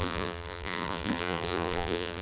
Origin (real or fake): fake